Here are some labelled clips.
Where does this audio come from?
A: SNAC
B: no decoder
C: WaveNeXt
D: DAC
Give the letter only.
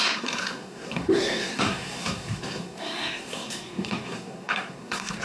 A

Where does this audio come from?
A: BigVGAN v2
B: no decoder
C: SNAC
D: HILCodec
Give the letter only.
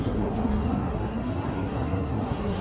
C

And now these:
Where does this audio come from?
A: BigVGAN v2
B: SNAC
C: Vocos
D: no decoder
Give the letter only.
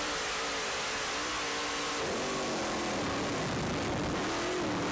D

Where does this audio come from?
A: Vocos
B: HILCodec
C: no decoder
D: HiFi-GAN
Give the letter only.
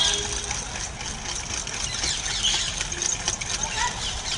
C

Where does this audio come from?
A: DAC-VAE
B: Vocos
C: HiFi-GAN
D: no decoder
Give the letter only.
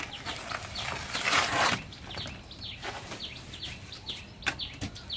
D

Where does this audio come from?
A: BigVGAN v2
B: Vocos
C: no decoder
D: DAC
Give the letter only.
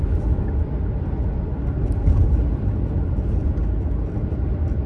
C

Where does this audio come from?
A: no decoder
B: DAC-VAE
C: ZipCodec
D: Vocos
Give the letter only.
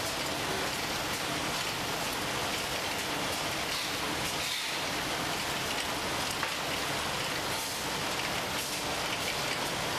A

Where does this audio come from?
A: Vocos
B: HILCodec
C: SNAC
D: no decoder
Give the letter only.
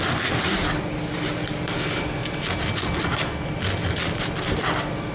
D